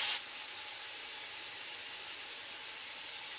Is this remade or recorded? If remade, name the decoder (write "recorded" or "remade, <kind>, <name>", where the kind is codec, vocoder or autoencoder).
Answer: recorded